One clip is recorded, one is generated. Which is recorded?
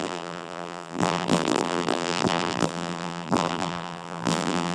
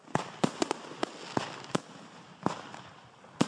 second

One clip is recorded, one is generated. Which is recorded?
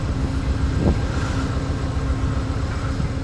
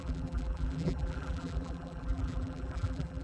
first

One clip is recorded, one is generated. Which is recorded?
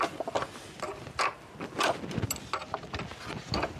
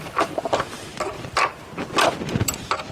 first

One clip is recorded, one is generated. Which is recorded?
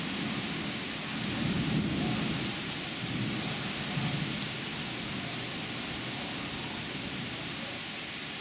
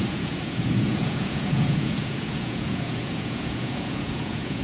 first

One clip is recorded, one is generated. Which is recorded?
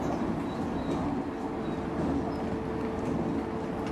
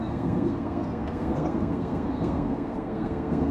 first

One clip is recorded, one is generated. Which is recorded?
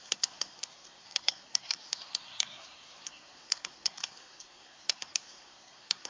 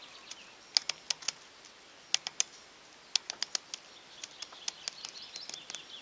second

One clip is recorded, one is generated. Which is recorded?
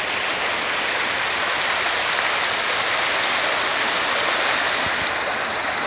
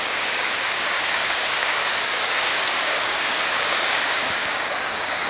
first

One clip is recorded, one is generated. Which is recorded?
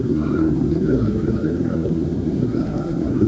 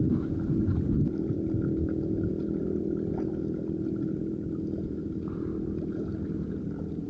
second